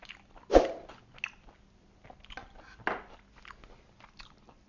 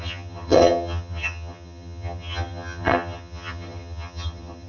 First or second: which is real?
first